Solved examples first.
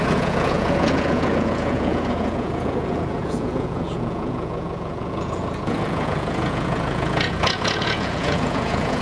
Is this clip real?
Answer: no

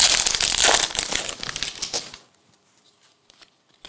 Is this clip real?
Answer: yes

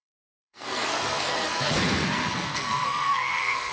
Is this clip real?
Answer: no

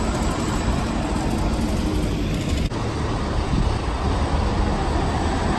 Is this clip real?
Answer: yes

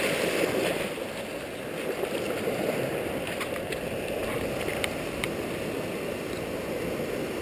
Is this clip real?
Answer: yes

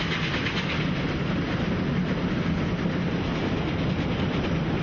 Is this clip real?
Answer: yes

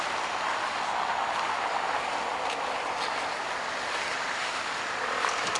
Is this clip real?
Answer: yes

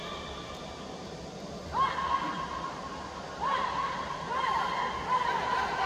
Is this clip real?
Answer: yes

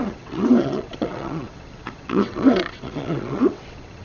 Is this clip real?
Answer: no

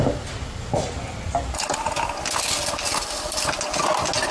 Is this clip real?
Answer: yes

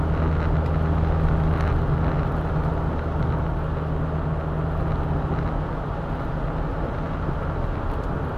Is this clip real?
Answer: yes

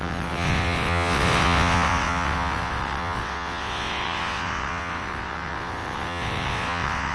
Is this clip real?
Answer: no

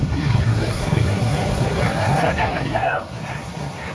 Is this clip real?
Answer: no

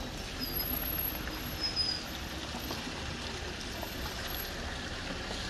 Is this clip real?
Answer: yes